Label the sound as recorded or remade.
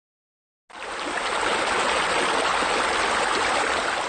recorded